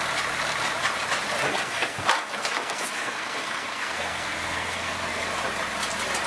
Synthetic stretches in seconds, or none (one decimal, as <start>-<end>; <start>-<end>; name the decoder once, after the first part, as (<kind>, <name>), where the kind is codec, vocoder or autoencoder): 1.5-5.3 (codec, SNAC)